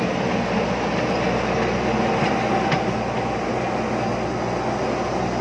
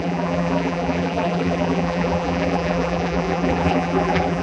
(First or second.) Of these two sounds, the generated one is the second